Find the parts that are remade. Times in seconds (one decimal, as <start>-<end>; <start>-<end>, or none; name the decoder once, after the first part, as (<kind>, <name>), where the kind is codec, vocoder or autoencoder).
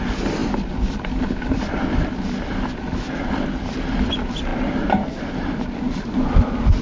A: none